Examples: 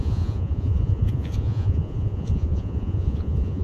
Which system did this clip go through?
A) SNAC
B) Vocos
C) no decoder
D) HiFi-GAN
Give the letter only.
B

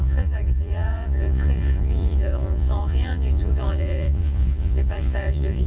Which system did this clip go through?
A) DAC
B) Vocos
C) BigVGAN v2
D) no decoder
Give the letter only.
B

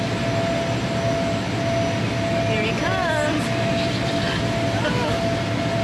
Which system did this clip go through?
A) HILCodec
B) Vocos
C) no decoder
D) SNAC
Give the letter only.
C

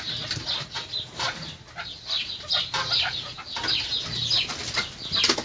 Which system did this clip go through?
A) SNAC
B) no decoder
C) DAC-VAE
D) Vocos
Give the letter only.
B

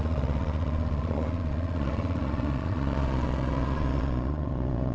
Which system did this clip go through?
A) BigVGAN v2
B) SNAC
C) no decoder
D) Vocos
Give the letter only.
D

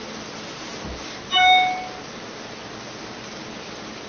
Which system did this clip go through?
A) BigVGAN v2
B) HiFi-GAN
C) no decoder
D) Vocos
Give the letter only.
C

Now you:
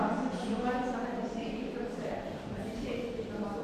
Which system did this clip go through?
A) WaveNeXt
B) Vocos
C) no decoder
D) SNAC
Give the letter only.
C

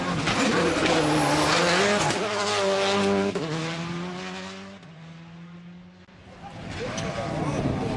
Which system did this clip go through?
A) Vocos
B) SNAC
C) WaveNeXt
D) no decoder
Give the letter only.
D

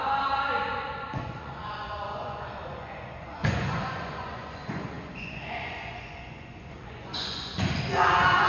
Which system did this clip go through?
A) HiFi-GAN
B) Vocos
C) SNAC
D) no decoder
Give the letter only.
B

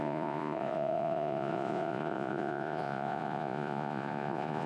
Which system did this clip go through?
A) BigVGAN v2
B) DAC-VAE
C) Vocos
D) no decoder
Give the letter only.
C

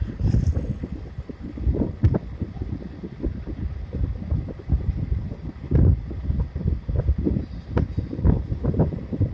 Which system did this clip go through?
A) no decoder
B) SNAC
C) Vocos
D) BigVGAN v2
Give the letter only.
A